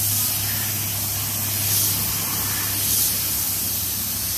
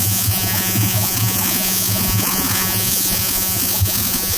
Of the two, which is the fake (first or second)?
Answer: second